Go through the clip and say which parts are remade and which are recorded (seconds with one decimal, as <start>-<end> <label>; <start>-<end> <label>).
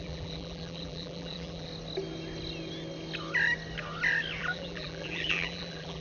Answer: 0.0-1.7 remade; 1.7-4.4 recorded; 4.4-6.0 remade